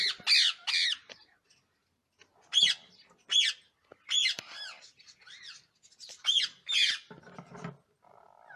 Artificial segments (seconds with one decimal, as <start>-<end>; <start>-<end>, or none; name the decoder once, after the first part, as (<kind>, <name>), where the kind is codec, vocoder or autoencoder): 4.2-6.1 (vocoder, BigVGAN v2)